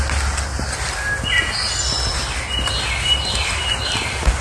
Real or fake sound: real